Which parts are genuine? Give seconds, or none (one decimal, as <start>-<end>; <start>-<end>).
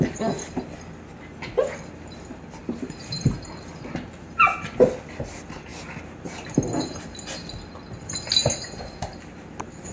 0.0-2.6; 3.4-9.9